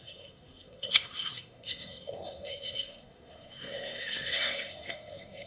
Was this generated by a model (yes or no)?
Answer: yes